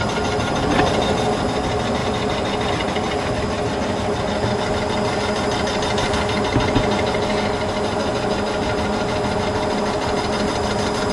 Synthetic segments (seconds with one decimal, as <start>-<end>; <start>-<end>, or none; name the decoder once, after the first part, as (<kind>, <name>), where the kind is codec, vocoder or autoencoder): none